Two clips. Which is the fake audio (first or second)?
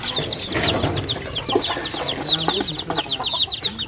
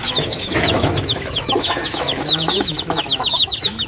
second